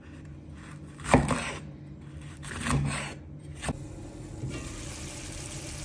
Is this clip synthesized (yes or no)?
no